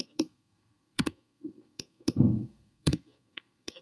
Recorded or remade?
remade